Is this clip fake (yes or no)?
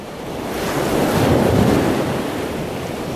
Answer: no